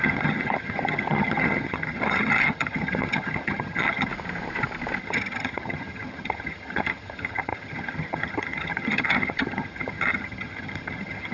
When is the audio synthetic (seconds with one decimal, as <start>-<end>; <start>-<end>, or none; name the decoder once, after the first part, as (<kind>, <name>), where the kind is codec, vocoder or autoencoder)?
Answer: 0.0-4.1 (vocoder, HiFi-GAN); 5.0-11.3